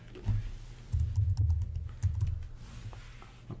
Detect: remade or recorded recorded